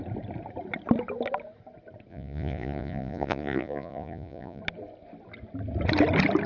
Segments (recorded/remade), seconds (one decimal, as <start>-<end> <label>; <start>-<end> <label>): 0.0-2.1 recorded; 2.1-4.6 remade; 4.6-6.5 recorded

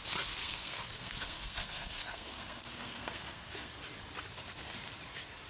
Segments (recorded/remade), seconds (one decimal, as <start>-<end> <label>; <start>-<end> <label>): 0.0-0.4 recorded; 0.4-3.7 remade; 3.7-5.5 recorded

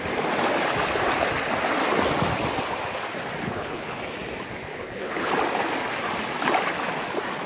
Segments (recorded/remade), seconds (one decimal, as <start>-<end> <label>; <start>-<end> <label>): 0.0-3.4 recorded; 3.4-4.0 remade; 4.0-4.7 recorded; 4.7-5.3 remade; 5.3-7.5 recorded

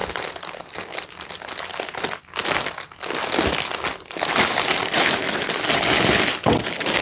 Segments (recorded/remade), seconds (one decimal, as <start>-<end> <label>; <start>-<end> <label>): 0.0-7.0 recorded

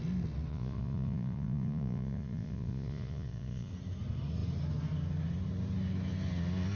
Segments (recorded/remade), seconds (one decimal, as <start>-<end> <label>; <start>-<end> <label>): 0.0-0.5 recorded; 0.5-3.7 remade; 3.7-6.8 recorded

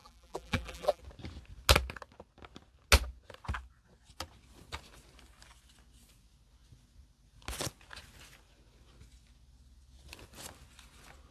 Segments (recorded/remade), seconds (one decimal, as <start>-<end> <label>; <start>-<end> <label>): 0.0-1.0 remade; 1.0-11.3 recorded